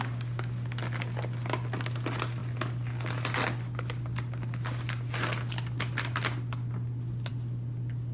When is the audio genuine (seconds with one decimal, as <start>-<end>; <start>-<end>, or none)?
0.0-8.1